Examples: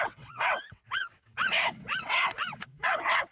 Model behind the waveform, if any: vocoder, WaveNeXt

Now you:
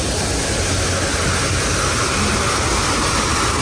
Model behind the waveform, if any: none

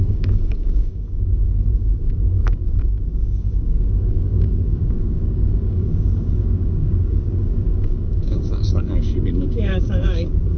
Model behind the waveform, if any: codec, DAC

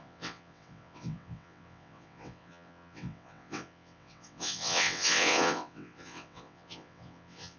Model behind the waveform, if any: vocoder, WaveNeXt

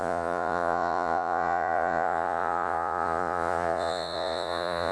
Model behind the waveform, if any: vocoder, Vocos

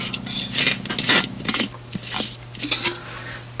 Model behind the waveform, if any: none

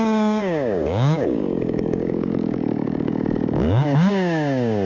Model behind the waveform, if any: codec, DAC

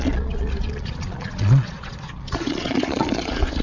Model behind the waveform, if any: vocoder, Vocos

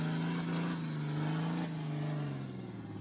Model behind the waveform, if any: none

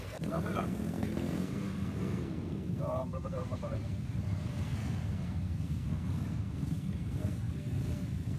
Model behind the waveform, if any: codec, SNAC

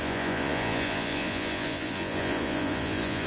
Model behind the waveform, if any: vocoder, Vocos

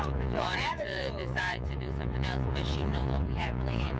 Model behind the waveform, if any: vocoder, Vocos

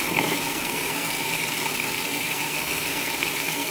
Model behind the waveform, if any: codec, SNAC